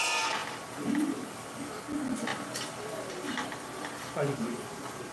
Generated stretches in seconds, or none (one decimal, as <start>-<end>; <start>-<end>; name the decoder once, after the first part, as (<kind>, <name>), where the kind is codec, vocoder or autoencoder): 0.4-1.8 (vocoder, BigVGAN v2); 2.3-5.1